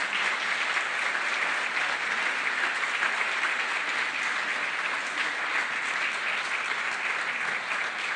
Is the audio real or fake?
real